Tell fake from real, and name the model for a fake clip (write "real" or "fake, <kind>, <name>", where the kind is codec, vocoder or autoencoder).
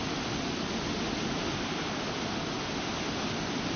real